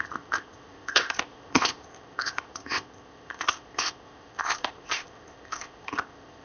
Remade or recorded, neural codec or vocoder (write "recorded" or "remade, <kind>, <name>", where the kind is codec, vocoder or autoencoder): remade, codec, ZipCodec